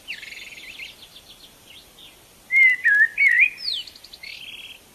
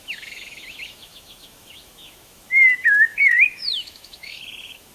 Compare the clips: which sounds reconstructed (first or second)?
second